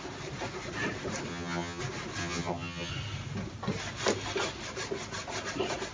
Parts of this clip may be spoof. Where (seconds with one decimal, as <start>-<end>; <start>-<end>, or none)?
1.3-1.8; 2.2-2.9